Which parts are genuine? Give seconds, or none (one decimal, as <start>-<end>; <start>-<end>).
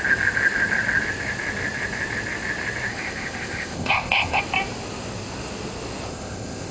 0.0-2.9; 4.4-6.1